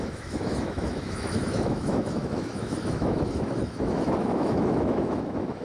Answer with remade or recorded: remade